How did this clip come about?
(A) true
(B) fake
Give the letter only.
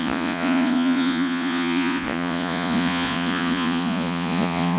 B